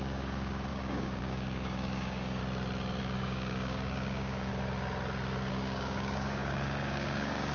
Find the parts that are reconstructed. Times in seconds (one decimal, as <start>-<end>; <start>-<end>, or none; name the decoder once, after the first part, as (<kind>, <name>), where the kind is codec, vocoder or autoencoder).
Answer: 0.0-2.4 (codec, DAC); 3.0-4.5; 5.5-7.5